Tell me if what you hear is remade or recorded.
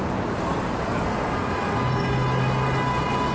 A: recorded